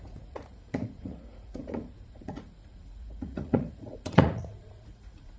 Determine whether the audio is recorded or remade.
remade